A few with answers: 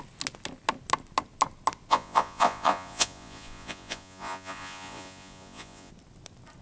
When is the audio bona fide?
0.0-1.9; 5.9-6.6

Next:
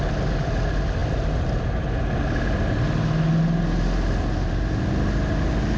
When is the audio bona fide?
0.0-5.8

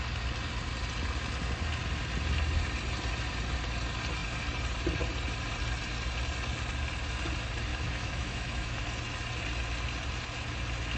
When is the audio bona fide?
0.0-7.7; 8.8-11.0

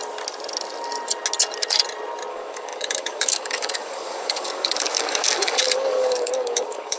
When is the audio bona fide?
0.0-2.3

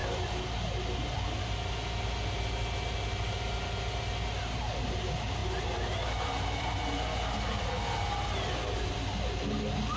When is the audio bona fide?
0.0-5.4; 6.8-10.0

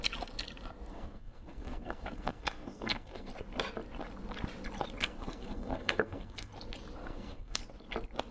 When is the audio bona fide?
0.0-0.9; 3.3-5.0; 6.5-7.0; 7.6-8.3

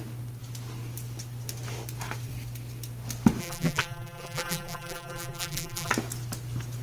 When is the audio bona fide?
0.0-3.4; 5.9-6.8